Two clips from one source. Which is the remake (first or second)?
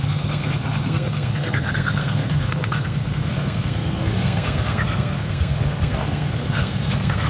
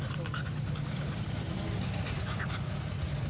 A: first